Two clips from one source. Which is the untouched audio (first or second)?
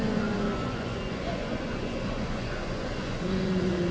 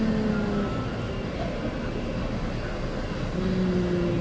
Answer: second